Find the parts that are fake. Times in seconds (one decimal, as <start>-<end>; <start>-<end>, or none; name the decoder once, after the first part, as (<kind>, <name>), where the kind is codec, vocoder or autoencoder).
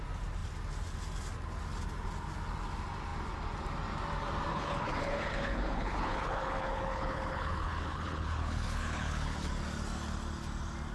4.5-9.5 (codec, HILCodec)